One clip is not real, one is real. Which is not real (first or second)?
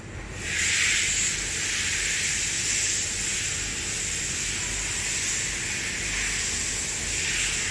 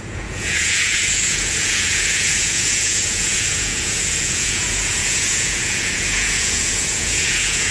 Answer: second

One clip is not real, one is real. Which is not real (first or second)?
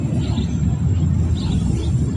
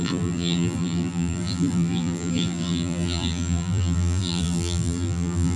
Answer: second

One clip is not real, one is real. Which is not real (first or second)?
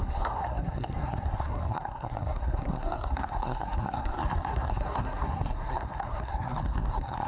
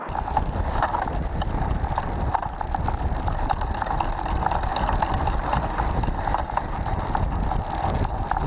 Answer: first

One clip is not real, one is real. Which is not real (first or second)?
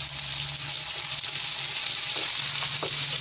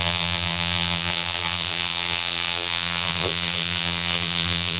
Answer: second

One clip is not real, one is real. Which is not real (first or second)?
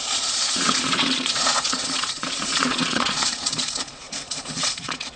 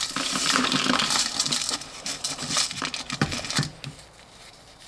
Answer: first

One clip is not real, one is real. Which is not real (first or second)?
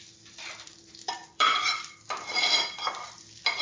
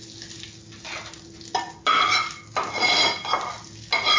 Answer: first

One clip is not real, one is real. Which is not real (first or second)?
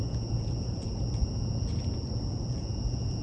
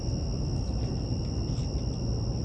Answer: first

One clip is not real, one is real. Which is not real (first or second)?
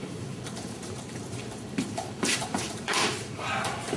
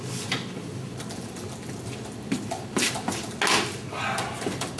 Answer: first